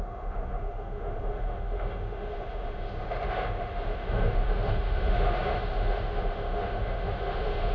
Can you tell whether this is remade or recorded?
remade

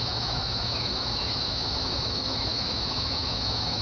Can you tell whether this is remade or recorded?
remade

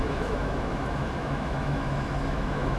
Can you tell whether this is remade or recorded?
remade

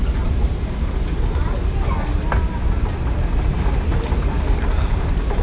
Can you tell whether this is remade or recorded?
recorded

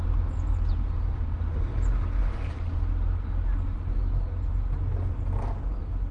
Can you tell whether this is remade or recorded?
recorded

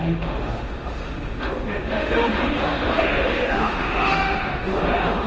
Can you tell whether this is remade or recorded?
remade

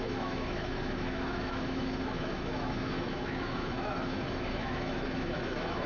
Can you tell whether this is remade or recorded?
remade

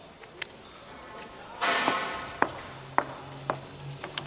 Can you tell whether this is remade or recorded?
recorded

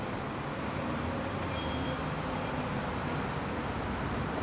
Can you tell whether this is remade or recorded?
recorded